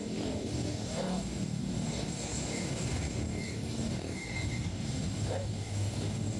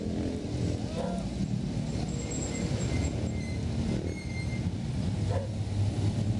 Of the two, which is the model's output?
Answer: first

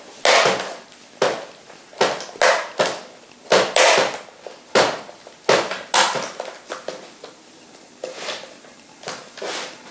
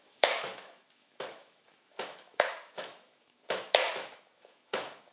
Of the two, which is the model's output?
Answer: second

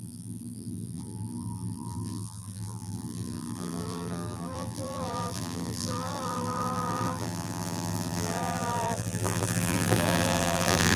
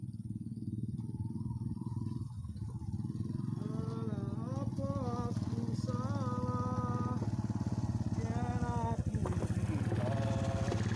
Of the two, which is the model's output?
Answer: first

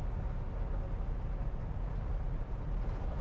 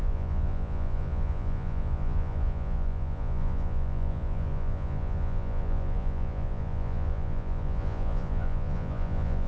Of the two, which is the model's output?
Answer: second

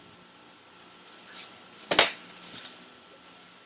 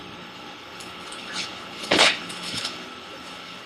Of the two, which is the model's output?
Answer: second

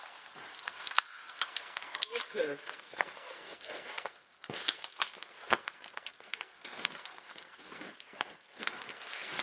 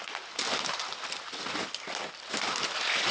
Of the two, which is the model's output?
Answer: first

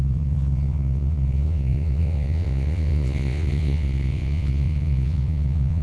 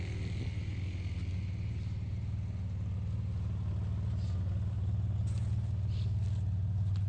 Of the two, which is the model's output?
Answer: first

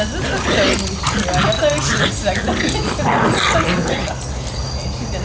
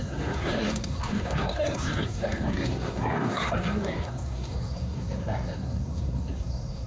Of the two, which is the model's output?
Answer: second